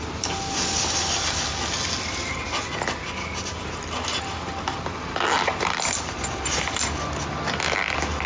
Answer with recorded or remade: recorded